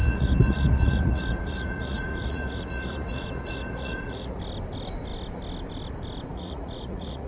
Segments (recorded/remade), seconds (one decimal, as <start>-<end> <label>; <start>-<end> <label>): 0.0-4.4 remade; 4.4-6.3 recorded; 6.3-7.3 remade